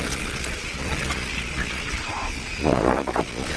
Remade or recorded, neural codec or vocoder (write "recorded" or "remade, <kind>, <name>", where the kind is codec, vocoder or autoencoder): remade, vocoder, Vocos